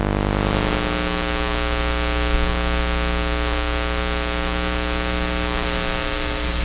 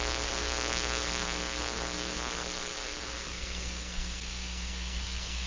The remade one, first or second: second